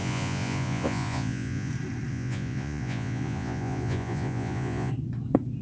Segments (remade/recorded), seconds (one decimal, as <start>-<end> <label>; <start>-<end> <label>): 0.0-1.7 remade; 1.7-2.1 recorded; 2.1-4.9 remade; 4.9-5.6 recorded